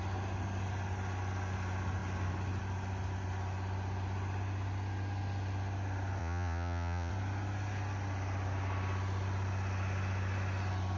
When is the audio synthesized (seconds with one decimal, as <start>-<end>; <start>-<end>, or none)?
6.2-7.1